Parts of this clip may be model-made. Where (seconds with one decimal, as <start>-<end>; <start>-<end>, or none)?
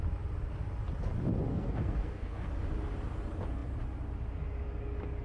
1.5-2.5